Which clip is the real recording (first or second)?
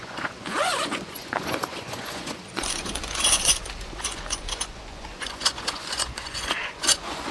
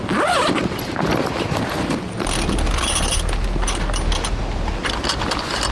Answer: second